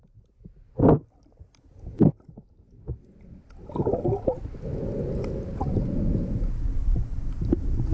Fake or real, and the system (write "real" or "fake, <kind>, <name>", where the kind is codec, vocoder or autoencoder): real